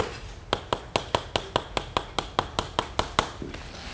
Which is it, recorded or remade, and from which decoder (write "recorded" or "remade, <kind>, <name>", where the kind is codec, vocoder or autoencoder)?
recorded